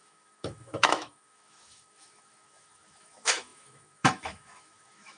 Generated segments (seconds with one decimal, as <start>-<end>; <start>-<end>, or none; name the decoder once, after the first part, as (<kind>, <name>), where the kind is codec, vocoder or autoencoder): 0.0-5.2 (autoencoder, DAC-VAE)